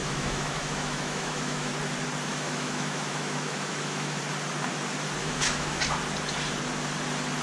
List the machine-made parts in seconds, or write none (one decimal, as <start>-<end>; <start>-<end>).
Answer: 0.0-1.7; 2.3-4.2; 5.2-5.8